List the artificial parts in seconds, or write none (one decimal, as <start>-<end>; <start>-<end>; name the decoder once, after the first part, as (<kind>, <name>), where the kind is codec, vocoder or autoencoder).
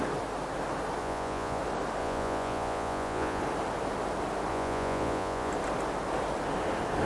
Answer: 1.0-1.6 (vocoder, Vocos); 2.0-3.4; 4.5-5.5